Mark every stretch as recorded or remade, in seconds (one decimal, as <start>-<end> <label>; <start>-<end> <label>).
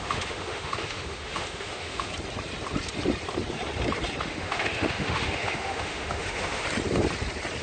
0.0-2.1 remade; 2.1-4.2 recorded; 4.2-6.6 remade; 6.6-7.6 recorded